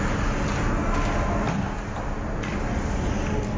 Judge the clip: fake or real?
real